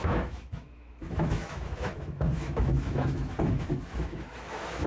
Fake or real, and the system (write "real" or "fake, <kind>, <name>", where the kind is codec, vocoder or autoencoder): fake, autoencoder, DAC-VAE